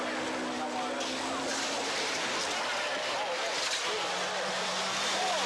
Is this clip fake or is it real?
real